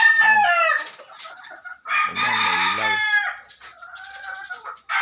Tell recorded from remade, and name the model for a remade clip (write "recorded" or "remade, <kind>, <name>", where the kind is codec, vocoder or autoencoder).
recorded